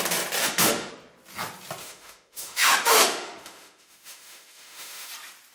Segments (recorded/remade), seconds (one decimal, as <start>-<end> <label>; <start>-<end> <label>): 0.0-0.4 recorded; 0.4-0.9 remade; 0.9-1.8 recorded; 1.8-5.1 remade; 5.1-5.5 recorded

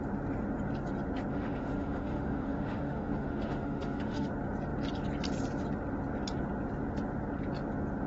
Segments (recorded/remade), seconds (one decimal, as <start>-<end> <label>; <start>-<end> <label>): 0.0-1.3 recorded; 1.3-4.3 remade; 4.3-8.1 recorded